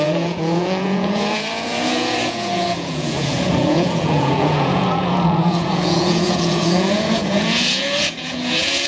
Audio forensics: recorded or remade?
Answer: remade